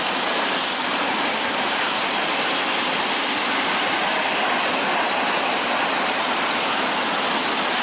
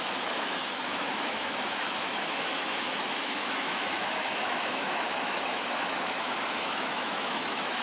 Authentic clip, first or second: first